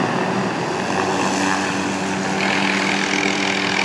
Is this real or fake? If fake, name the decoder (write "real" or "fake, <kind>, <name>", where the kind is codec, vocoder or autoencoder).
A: real